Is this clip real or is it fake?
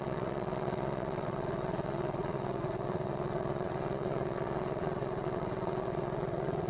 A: fake